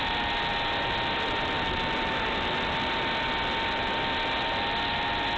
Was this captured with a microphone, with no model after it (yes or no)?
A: yes